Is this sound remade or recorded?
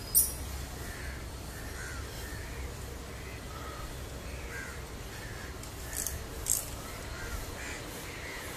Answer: recorded